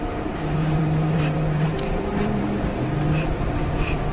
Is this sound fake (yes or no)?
yes